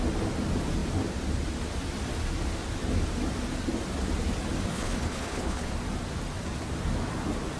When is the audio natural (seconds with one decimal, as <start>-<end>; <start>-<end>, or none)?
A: 0.0-4.7; 5.7-7.6